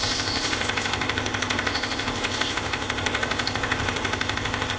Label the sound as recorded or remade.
remade